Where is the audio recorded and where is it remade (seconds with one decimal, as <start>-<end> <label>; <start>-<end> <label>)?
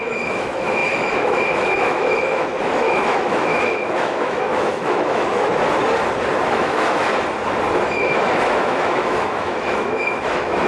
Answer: 0.0-5.5 remade; 5.5-6.5 recorded; 6.5-7.1 remade; 7.1-7.7 recorded; 7.7-10.7 remade